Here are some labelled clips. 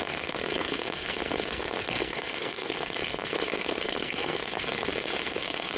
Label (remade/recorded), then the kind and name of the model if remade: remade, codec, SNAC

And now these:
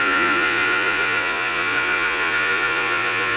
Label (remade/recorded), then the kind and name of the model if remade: remade, vocoder, Vocos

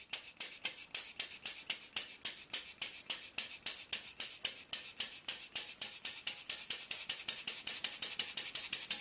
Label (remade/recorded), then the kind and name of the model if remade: recorded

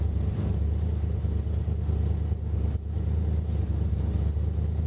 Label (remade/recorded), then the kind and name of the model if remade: recorded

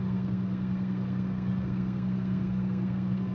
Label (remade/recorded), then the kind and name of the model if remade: remade, codec, SNAC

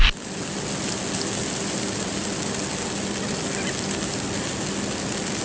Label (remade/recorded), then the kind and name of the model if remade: recorded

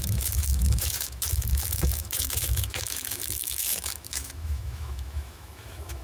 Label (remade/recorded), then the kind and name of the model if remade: remade, autoencoder, DAC-VAE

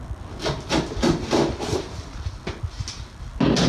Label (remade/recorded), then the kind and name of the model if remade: recorded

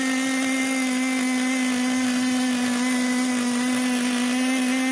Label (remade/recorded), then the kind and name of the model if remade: recorded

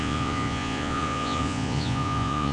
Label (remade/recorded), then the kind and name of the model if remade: remade, vocoder, Vocos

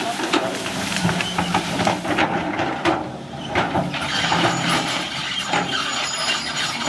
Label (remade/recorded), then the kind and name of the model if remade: remade, vocoder, BigVGAN v2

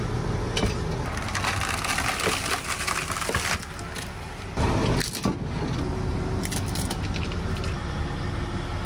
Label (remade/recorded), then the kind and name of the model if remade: recorded